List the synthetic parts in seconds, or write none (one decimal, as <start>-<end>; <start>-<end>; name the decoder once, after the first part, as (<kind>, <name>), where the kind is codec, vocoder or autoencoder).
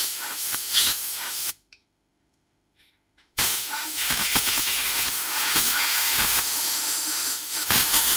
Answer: 0.0-8.2 (autoencoder, DAC-VAE)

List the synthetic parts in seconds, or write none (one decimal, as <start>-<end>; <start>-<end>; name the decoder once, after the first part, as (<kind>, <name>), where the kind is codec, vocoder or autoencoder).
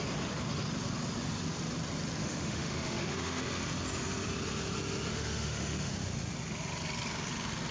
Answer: 2.2-3.4 (autoencoder, DAC-VAE); 5.1-5.9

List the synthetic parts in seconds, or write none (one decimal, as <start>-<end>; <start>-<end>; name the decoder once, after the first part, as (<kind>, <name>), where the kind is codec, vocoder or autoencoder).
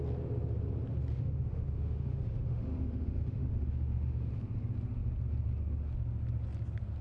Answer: 1.1-4.3 (autoencoder, DAC-VAE)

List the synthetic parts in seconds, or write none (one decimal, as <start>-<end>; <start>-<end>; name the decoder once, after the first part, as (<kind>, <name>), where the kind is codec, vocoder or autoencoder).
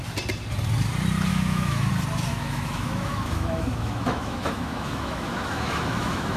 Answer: 1.3-1.9 (autoencoder, DAC-VAE); 2.3-6.4